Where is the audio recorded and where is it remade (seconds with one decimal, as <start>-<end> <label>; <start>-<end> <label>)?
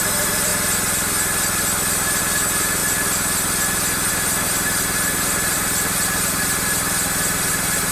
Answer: 0.0-0.5 remade; 0.5-2.2 recorded; 2.2-2.8 remade; 2.8-4.1 recorded; 4.1-7.9 remade